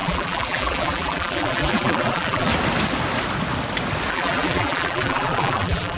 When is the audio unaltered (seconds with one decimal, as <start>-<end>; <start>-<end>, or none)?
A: 2.5-4.1